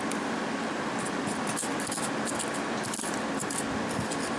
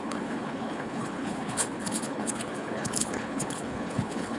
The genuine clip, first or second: first